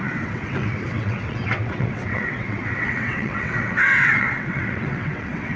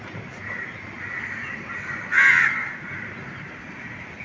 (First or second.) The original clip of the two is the second